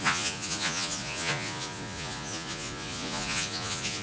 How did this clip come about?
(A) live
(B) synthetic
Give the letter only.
B